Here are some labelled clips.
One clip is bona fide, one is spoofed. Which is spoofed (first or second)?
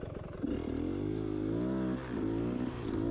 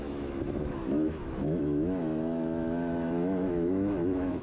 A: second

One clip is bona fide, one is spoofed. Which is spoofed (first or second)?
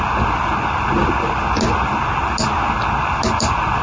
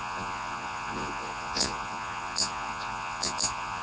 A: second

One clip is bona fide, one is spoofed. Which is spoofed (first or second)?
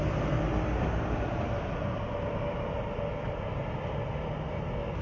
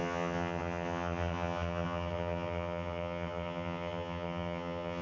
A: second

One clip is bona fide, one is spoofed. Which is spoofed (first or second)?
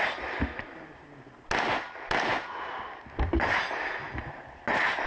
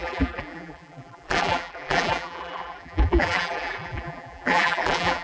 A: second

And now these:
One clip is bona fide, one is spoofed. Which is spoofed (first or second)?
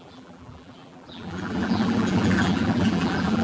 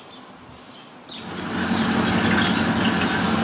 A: first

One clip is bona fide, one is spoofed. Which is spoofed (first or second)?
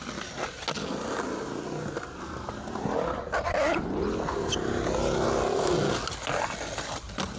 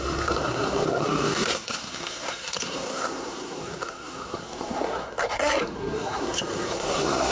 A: second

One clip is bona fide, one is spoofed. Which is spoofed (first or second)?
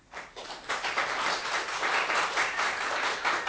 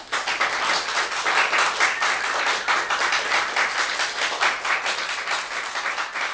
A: first